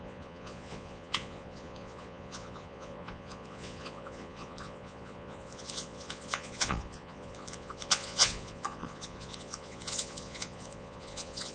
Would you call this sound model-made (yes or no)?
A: yes